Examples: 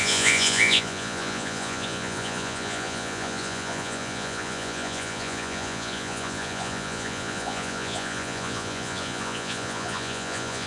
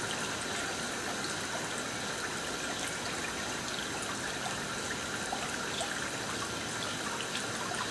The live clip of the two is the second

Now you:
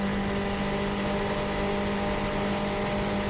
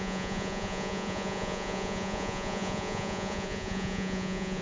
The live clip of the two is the first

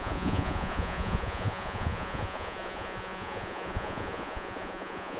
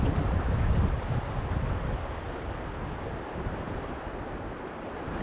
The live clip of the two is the second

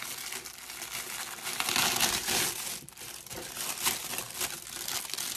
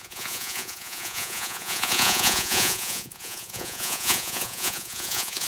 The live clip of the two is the first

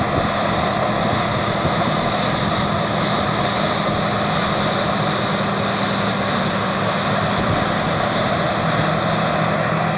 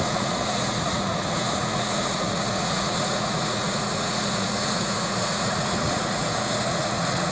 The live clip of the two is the first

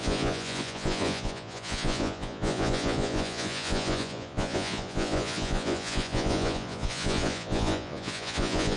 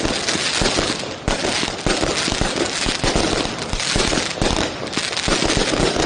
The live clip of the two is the second